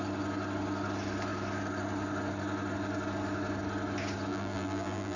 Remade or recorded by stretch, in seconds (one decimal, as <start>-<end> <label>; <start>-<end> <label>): 0.0-4.3 recorded; 4.3-5.2 remade

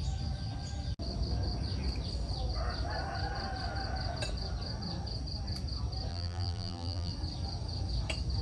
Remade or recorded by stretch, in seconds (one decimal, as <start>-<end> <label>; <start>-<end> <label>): 0.0-6.1 recorded; 6.1-7.1 remade; 7.1-8.4 recorded

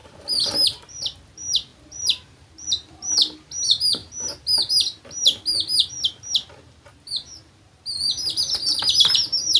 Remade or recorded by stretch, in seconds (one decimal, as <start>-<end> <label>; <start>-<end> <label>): 0.0-0.8 remade; 0.8-9.6 recorded

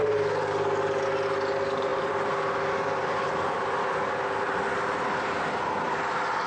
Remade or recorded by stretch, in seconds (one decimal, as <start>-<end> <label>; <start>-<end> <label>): 0.0-1.9 recorded; 1.9-3.9 remade; 3.9-6.5 recorded